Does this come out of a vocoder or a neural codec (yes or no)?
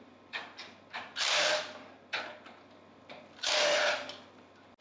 no